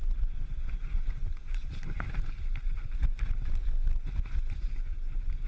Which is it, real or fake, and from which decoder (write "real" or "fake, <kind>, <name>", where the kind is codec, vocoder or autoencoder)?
real